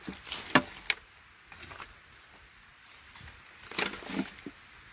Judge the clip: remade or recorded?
recorded